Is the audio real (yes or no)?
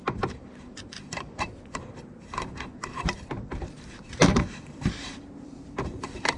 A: no